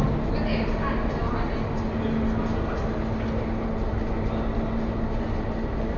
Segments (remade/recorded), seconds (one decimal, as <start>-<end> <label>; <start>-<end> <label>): 0.0-6.0 recorded